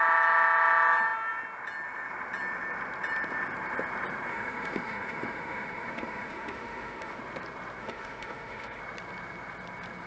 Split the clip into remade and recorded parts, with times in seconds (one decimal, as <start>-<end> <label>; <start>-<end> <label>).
0.0-4.3 recorded; 4.3-7.2 remade; 7.2-7.8 recorded; 7.8-8.8 remade; 8.8-10.1 recorded